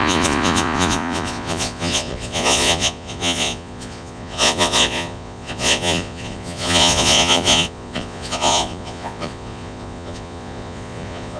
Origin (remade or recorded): remade